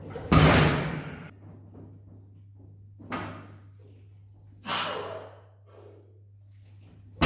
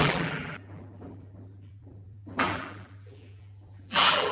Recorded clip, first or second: first